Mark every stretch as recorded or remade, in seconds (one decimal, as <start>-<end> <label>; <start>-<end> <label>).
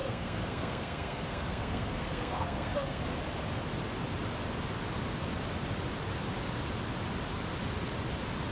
0.0-3.0 remade; 3.0-8.5 recorded